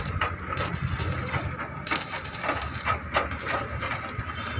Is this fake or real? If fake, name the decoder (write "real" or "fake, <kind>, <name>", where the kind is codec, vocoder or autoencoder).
real